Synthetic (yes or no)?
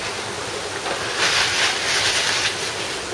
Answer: no